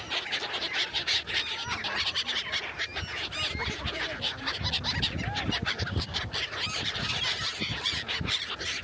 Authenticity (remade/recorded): recorded